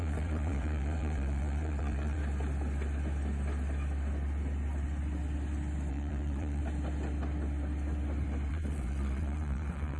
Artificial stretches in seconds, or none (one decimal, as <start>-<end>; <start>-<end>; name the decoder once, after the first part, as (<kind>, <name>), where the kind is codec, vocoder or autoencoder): 0.0-2.2 (vocoder, WaveNeXt); 5.9-6.6; 8.5-10.0